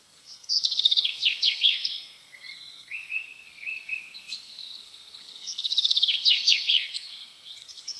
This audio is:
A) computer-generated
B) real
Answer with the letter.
A